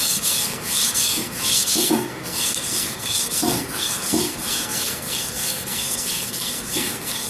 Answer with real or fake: fake